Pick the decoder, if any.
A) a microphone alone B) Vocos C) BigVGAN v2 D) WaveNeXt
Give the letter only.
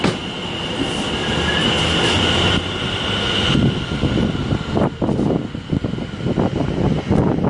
A